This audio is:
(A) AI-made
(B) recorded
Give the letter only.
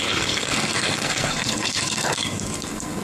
A